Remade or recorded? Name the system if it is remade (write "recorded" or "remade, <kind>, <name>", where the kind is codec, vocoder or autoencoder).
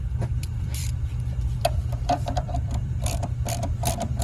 remade, vocoder, BigVGAN v2